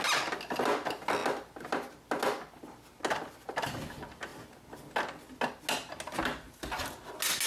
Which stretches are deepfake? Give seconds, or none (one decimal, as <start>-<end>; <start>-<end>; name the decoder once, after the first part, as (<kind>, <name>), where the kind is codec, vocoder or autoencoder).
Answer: none